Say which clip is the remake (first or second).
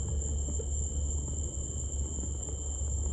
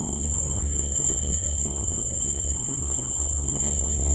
second